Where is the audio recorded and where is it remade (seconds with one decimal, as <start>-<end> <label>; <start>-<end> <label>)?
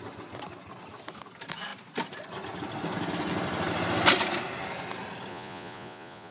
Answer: 0.0-5.3 recorded; 5.3-6.3 remade